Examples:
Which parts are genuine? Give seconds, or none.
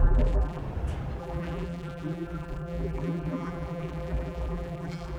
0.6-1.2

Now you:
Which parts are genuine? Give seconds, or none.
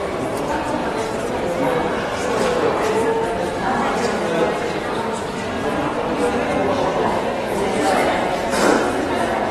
0.0-6.6; 8.9-9.5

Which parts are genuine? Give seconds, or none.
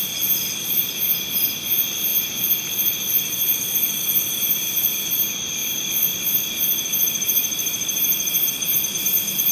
0.0-5.6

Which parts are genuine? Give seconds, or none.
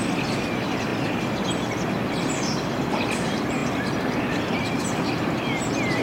0.0-6.0